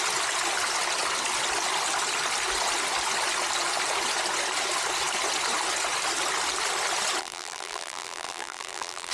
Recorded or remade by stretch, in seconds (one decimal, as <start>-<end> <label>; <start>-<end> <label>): 0.0-7.2 recorded; 7.2-9.1 remade